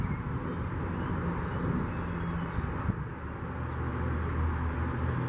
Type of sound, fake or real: real